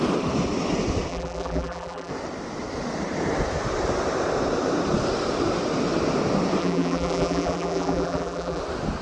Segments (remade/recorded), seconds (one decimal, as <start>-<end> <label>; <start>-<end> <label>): 0.0-1.1 recorded; 1.1-2.1 remade; 2.1-6.6 recorded; 6.6-8.6 remade; 8.6-9.0 recorded